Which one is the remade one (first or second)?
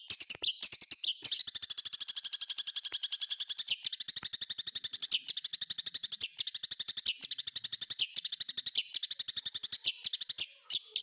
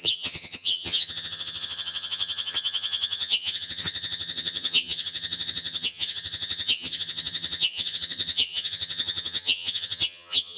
second